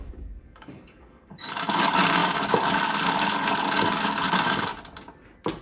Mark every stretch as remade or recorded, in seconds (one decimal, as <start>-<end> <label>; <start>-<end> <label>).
0.0-4.7 remade; 4.7-5.6 recorded